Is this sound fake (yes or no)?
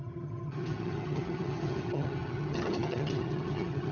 yes